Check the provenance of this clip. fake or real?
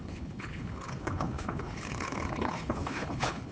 fake